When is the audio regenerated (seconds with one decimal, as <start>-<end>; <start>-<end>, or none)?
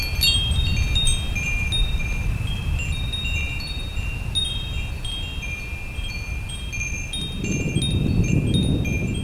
none